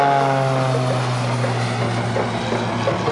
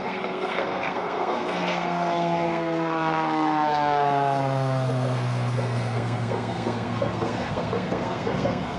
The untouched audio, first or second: first